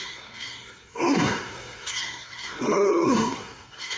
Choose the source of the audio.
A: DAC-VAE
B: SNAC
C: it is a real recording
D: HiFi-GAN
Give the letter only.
B